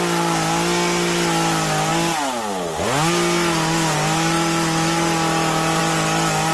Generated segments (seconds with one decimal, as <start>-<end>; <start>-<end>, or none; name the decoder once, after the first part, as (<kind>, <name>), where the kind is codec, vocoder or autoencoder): none